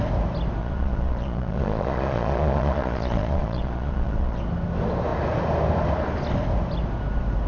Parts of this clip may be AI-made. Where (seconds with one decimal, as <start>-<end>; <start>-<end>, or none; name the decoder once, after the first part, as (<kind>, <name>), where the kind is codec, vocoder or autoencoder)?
0.6-4.4 (vocoder, Vocos)